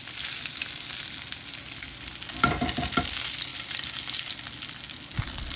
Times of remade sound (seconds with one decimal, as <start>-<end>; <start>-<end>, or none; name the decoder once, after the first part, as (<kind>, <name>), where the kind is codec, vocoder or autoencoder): none